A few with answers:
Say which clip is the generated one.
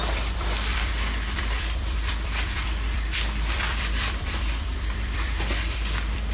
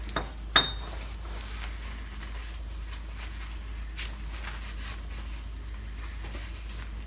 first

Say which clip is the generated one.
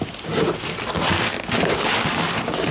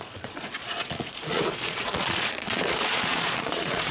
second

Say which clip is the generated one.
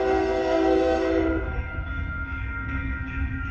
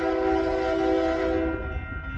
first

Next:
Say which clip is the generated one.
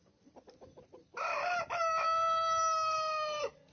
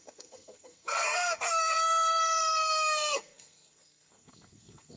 second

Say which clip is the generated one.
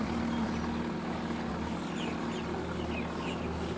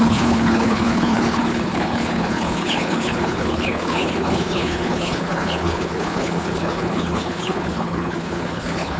second